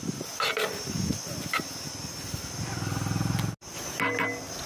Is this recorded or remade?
recorded